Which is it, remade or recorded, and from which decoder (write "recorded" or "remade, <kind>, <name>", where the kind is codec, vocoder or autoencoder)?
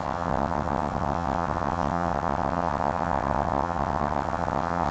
remade, vocoder, WaveNeXt